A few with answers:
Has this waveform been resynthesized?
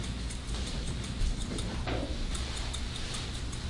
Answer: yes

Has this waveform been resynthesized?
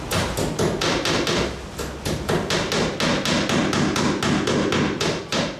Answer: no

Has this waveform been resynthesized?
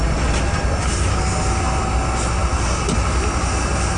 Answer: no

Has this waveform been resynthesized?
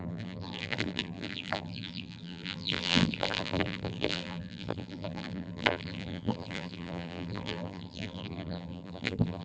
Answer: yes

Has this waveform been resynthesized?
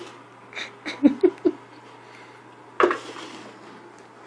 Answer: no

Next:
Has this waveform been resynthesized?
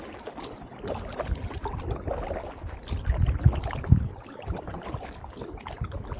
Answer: no